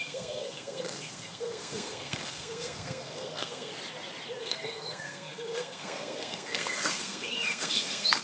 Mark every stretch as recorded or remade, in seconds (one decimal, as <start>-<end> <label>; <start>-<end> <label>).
0.0-3.7 remade; 3.7-4.4 recorded; 4.4-8.2 remade